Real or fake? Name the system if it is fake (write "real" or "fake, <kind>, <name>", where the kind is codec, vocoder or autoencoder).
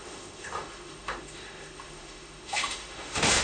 fake, autoencoder, DAC-VAE